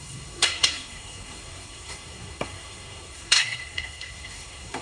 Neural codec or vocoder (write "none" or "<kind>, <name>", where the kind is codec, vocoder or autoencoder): codec, SNAC